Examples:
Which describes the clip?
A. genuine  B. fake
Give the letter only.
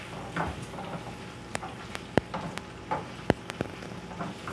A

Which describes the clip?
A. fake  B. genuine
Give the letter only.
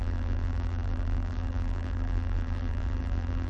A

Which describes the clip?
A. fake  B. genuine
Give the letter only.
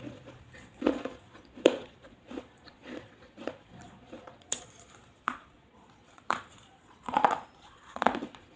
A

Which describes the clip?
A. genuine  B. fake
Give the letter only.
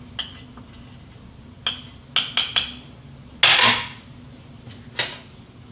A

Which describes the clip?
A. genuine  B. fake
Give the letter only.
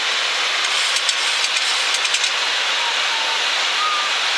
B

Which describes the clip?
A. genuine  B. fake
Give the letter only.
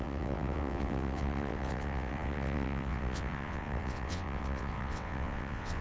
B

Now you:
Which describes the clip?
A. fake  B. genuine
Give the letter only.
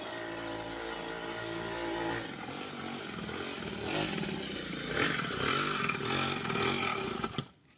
B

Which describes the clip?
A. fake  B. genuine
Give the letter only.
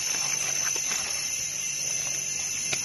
B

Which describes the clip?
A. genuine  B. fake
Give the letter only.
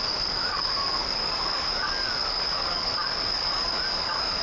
B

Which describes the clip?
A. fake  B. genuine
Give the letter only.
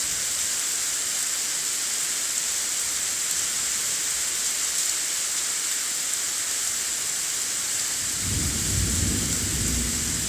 B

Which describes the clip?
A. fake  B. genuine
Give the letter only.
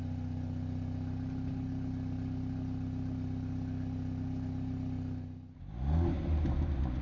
B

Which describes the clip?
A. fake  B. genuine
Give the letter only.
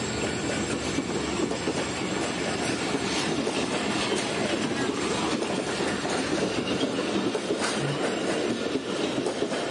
B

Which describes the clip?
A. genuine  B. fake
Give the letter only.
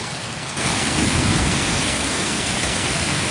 B